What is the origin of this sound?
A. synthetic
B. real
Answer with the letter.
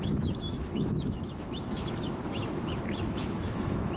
A